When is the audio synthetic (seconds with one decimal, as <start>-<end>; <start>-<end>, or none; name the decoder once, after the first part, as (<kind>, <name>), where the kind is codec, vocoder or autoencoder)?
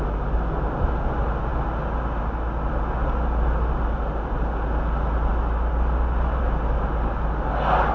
none